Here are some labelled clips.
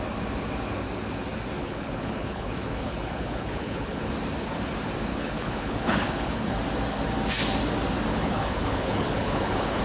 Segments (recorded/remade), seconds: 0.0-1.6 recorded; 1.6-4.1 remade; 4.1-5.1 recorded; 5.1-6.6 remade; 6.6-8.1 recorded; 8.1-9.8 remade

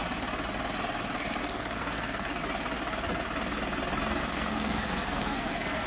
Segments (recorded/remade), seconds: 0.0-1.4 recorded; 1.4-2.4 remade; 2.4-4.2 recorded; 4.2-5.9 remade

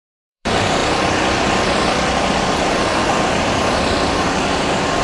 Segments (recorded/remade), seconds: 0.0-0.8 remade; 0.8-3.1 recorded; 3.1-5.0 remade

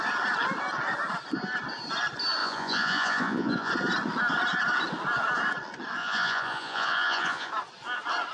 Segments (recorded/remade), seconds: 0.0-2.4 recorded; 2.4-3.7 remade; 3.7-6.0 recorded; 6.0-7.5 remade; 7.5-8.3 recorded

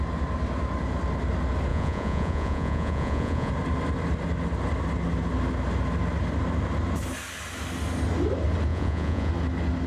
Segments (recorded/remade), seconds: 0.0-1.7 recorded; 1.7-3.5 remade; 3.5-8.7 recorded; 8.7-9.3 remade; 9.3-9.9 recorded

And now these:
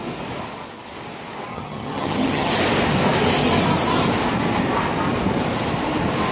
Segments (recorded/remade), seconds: 0.0-1.5 recorded; 1.5-2.5 remade; 2.5-6.3 recorded